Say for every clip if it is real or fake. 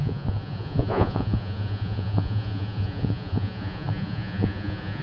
fake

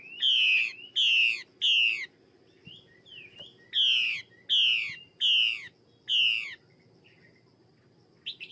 real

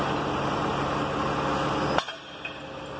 real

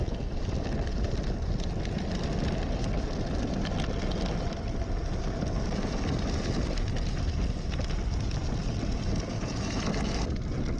real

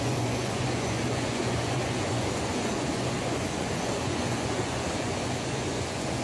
fake